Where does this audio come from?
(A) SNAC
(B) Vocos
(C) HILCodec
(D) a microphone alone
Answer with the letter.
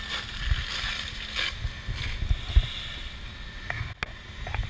D